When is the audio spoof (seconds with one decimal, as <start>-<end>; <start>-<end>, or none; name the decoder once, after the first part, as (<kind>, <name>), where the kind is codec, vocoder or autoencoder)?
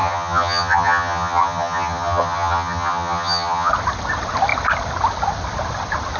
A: 0.0-3.7 (vocoder, HiFi-GAN)